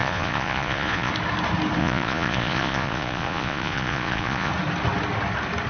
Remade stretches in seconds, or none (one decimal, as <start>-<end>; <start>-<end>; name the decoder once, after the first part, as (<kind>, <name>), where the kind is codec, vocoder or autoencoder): 0.0-1.1 (vocoder, Vocos); 1.8-4.5